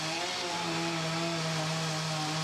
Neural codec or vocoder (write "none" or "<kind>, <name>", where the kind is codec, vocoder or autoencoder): none